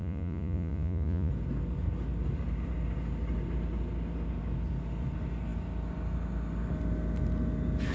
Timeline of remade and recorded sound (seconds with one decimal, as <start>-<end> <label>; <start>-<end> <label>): 0.0-1.3 remade; 1.3-7.9 recorded